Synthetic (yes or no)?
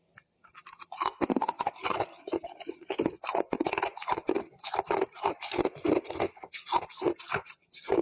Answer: no